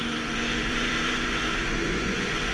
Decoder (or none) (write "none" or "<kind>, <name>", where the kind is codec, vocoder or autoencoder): vocoder, Vocos